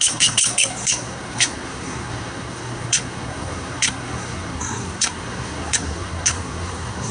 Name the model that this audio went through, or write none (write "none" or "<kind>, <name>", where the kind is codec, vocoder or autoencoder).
codec, SNAC